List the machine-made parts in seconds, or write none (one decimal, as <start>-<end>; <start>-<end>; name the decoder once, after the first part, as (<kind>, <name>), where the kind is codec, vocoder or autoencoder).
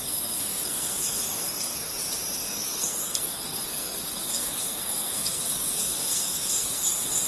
0.0-1.9 (codec, SNAC); 2.5-7.3